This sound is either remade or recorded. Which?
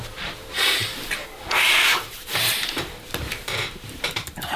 remade